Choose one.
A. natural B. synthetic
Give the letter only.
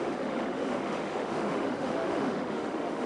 B